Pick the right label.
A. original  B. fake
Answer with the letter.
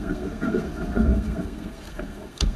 B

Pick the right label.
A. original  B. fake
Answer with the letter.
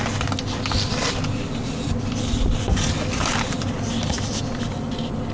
A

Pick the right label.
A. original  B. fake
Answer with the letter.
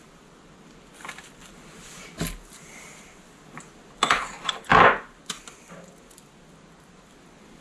A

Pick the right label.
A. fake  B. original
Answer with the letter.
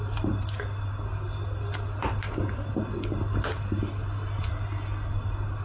B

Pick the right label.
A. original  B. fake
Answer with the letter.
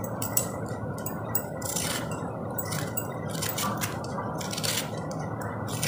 B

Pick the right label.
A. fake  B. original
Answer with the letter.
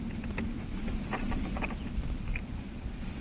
B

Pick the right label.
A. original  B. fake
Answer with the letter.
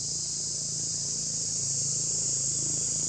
A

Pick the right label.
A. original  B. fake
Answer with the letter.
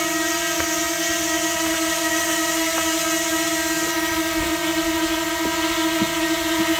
A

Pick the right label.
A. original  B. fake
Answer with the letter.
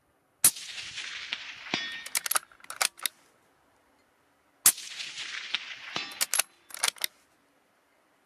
A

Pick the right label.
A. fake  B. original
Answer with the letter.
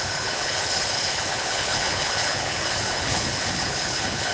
A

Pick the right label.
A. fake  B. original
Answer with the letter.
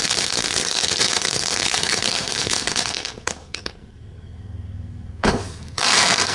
A